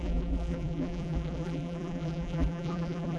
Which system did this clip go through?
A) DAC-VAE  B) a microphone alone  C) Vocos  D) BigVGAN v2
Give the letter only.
D